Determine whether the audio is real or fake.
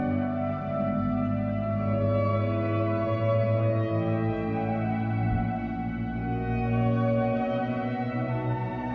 real